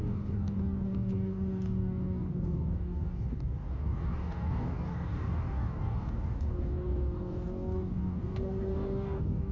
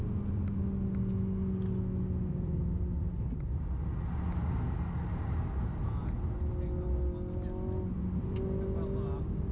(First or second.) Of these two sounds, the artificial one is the first